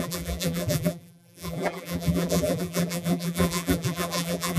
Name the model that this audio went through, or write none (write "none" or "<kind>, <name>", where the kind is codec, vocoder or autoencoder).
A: vocoder, BigVGAN v2